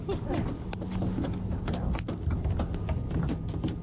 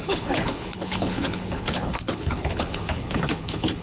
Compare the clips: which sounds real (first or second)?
first